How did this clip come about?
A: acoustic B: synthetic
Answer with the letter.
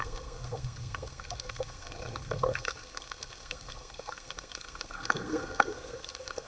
B